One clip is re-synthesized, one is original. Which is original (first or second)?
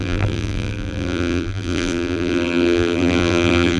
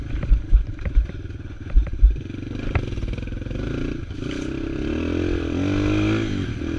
second